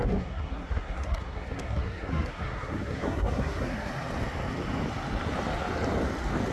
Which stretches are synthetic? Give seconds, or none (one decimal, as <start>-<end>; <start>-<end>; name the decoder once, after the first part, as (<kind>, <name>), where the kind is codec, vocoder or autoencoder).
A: 0.0-3.9 (codec, SNAC)